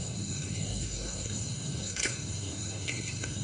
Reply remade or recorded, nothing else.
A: remade